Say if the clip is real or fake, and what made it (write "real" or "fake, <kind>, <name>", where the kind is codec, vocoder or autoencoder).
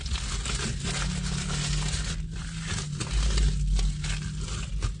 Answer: real